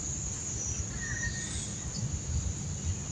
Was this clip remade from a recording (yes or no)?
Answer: no